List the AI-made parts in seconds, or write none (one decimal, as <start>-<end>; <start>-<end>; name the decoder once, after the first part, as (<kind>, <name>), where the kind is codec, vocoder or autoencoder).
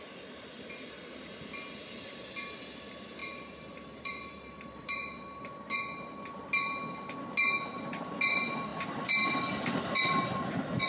3.2-5.7 (vocoder, BigVGAN v2)